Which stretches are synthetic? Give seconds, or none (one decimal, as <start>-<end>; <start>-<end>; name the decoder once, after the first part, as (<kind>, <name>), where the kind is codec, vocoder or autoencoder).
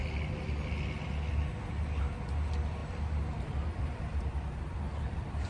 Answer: 2.8-5.5 (vocoder, BigVGAN v2)